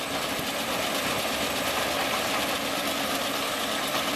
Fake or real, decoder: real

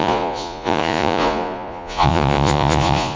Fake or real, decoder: fake, vocoder, Vocos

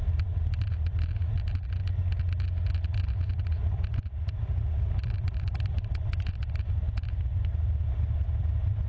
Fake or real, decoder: real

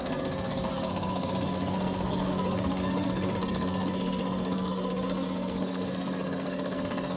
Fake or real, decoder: fake, codec, SNAC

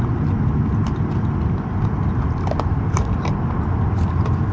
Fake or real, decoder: real